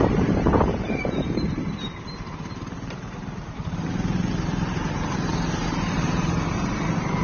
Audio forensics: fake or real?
fake